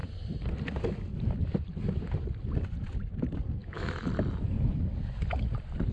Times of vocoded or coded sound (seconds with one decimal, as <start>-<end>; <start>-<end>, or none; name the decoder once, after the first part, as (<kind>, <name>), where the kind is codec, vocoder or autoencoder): 3.6-4.1 (autoencoder, DAC-VAE)